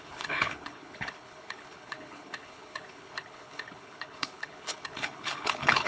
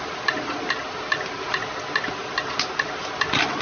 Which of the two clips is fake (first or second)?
first